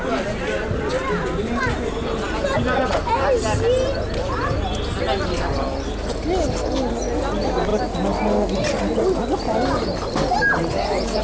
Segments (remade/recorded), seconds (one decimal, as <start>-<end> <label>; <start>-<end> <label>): 0.0-11.2 recorded